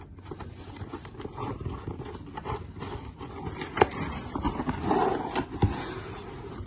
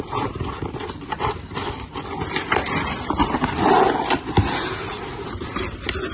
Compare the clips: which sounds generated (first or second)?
second